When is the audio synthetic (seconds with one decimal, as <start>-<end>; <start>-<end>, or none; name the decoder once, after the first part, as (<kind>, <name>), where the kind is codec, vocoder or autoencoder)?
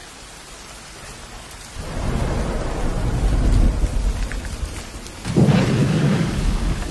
5.8-6.9 (codec, DAC)